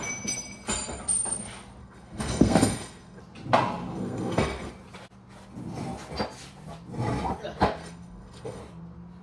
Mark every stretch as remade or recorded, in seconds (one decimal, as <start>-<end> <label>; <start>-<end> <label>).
0.0-1.8 recorded; 1.8-3.2 remade; 3.2-3.9 recorded; 3.9-4.7 remade; 4.7-7.8 recorded; 7.8-8.6 remade; 8.6-9.2 recorded